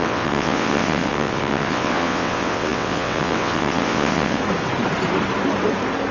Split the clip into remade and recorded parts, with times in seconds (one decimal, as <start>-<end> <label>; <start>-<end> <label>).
0.0-4.4 remade; 4.4-6.1 recorded